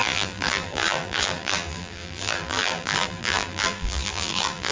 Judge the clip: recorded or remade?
remade